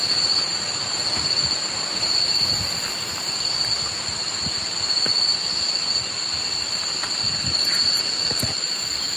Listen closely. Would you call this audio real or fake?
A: real